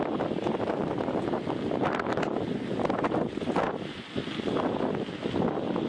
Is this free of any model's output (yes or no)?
yes